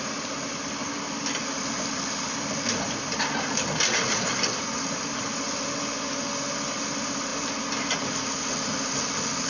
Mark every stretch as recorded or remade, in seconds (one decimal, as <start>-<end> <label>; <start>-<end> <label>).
0.0-9.5 recorded